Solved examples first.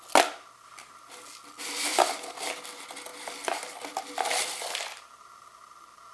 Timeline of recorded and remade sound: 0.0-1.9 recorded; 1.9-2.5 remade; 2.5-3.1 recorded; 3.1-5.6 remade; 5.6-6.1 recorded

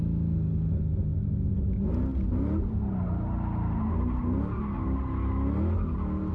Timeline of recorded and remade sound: 0.0-6.3 recorded